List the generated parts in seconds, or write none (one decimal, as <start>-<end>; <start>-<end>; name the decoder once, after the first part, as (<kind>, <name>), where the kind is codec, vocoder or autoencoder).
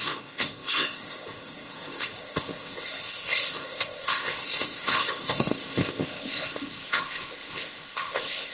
0.0-8.5 (codec, ZipCodec)